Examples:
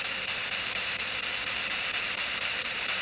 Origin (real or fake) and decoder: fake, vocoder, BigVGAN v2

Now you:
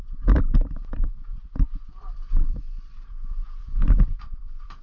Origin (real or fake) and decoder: fake, vocoder, BigVGAN v2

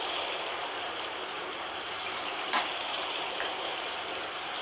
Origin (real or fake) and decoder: fake, vocoder, BigVGAN v2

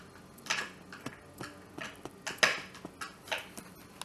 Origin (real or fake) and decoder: real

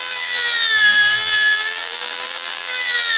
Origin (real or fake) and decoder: fake, vocoder, BigVGAN v2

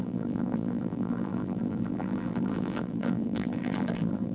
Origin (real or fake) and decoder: fake, vocoder, BigVGAN v2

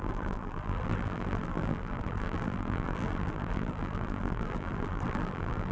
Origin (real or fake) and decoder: fake, vocoder, BigVGAN v2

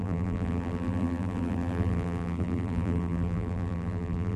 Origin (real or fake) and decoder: fake, vocoder, BigVGAN v2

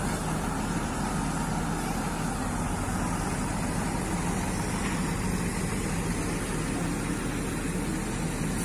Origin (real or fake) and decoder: real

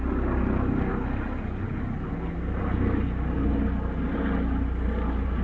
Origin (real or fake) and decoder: real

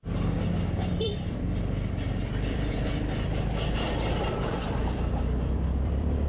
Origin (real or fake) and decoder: fake, vocoder, BigVGAN v2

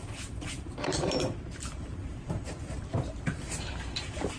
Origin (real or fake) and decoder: fake, vocoder, BigVGAN v2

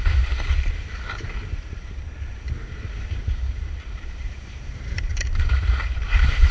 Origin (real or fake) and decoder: fake, vocoder, BigVGAN v2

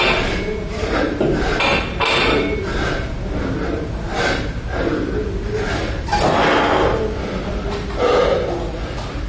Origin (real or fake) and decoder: real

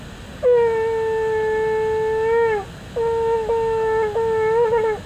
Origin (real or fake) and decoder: real